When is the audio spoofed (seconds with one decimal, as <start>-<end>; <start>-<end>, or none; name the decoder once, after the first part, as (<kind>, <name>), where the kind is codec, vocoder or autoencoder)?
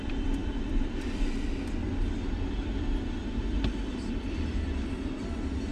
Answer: none